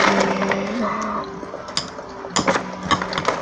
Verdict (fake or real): real